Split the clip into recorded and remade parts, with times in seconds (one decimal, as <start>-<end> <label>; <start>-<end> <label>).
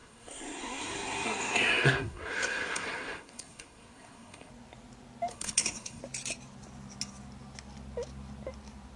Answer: 0.0-4.5 remade; 4.5-5.3 recorded; 5.3-6.0 remade; 6.0-9.0 recorded